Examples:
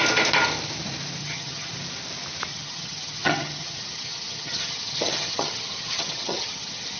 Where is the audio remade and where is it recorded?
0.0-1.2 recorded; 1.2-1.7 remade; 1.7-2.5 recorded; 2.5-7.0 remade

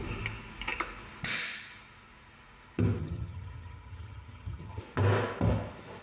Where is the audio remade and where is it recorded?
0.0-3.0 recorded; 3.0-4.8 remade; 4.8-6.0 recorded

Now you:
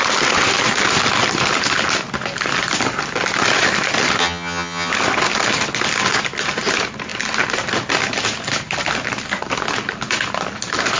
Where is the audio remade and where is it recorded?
0.0-4.2 recorded; 4.2-4.9 remade; 4.9-11.0 recorded

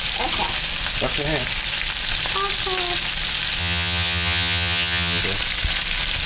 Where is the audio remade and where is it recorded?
0.0-3.6 recorded; 3.6-5.2 remade; 5.2-6.3 recorded

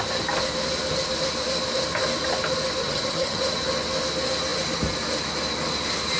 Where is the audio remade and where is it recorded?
0.0-2.8 recorded; 2.8-3.4 remade; 3.4-6.2 recorded

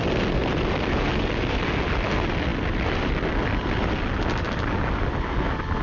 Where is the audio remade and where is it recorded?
0.0-5.8 recorded